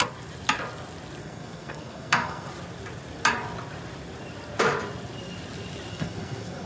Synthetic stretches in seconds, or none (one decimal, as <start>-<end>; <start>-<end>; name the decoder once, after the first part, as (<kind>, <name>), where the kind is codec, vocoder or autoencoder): 1.2-2.5 (codec, SNAC); 5.9-6.7